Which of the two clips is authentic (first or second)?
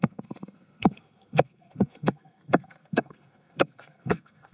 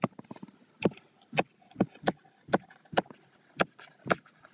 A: second